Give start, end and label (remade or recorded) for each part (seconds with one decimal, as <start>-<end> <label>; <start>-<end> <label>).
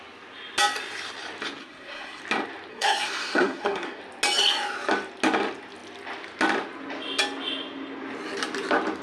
0.0-1.6 recorded; 1.6-2.2 remade; 2.2-2.7 recorded; 2.7-4.0 remade; 4.0-9.0 recorded